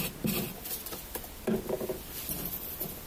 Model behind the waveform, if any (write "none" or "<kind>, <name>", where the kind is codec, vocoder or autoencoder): none